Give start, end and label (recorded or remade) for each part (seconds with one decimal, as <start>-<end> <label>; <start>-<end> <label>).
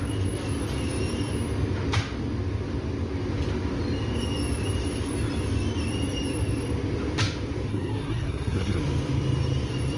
0.0-7.7 recorded; 7.7-8.8 remade; 8.8-10.0 recorded